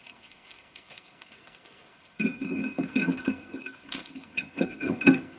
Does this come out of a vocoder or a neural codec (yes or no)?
yes